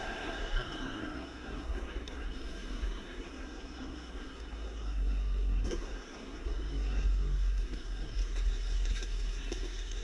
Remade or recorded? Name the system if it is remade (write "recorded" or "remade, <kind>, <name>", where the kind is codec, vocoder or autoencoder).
remade, codec, SNAC